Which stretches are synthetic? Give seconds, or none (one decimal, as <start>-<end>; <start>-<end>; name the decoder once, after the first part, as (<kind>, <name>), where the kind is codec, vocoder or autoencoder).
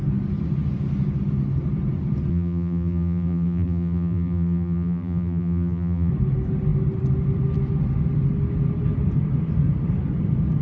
2.3-6.1 (vocoder, BigVGAN v2)